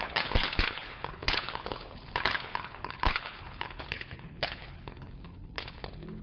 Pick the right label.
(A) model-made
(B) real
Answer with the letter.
A